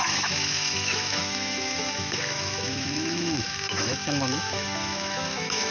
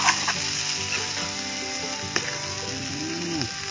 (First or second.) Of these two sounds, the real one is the second